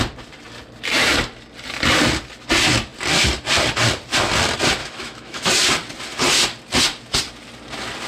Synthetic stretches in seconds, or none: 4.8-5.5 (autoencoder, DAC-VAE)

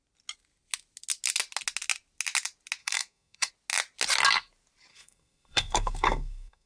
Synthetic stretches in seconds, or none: 2.8-3.5 (codec, SNAC); 4.9-6.7

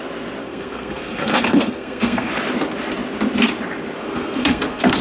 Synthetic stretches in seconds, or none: 0.4-2.3 (codec, SNAC); 4.0-5.0

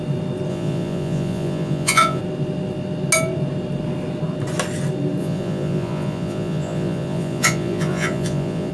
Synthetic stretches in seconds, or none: 0.5-2.2 (vocoder, Vocos); 5.2-8.7

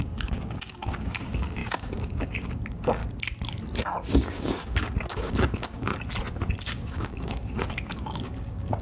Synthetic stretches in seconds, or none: 0.0-3.0 (codec, DAC); 4.1-5.9; 6.6-8.8